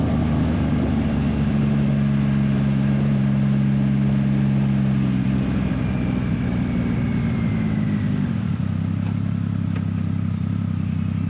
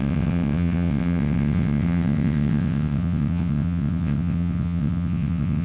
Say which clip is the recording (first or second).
first